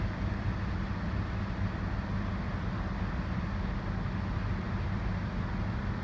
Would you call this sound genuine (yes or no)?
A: yes